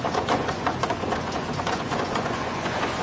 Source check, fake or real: fake